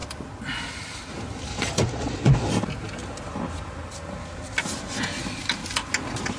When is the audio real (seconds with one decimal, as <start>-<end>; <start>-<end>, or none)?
0.0-1.5; 2.5-6.4